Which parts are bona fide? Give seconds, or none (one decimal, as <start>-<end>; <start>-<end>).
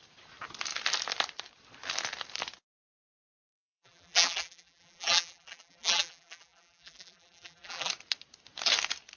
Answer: 0.0-3.4; 7.9-9.2